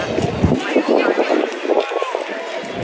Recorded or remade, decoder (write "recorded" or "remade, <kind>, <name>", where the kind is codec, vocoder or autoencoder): recorded